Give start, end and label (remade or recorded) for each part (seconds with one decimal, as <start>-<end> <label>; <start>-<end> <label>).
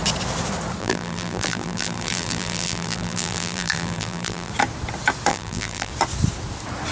0.0-0.8 recorded; 0.8-4.5 remade; 4.5-5.3 recorded; 5.3-5.9 remade; 5.9-6.9 recorded